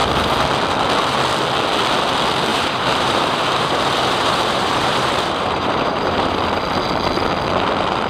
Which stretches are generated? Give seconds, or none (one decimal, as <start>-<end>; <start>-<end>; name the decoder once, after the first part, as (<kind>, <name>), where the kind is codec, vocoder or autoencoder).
2.5-6.3 (vocoder, BigVGAN v2)